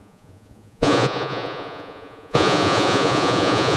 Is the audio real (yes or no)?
no